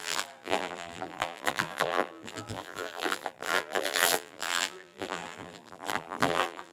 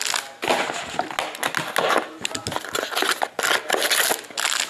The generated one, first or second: first